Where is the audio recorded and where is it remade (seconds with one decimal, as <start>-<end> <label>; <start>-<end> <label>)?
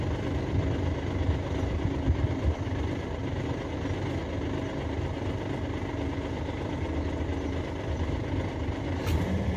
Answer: 0.0-3.2 remade; 3.2-7.6 recorded; 7.6-9.6 remade